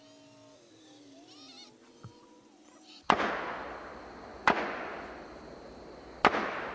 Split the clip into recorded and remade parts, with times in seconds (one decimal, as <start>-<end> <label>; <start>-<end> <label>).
0.0-1.8 recorded; 1.8-3.3 remade; 3.3-4.3 recorded; 4.3-5.2 remade; 5.2-6.7 recorded